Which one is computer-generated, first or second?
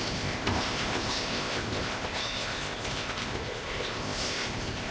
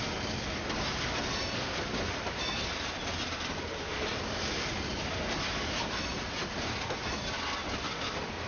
first